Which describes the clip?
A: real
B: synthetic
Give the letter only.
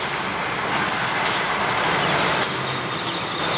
A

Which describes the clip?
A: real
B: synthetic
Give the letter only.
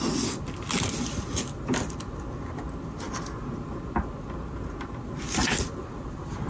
A